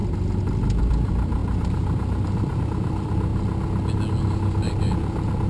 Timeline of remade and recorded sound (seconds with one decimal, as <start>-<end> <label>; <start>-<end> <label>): 0.0-0.8 recorded; 0.8-3.3 remade; 3.3-4.3 recorded; 4.3-5.5 remade